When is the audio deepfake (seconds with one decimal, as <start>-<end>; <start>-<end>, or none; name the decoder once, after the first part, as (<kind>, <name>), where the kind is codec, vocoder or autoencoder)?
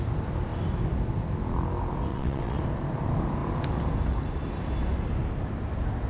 2.1-2.6 (vocoder, WaveNeXt)